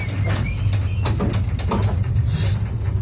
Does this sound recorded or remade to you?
recorded